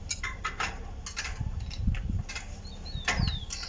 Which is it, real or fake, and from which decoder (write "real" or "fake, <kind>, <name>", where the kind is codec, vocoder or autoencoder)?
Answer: real